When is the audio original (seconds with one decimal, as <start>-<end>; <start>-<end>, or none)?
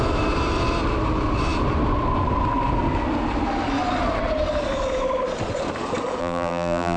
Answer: 0.0-6.2